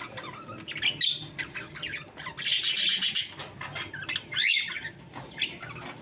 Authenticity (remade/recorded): recorded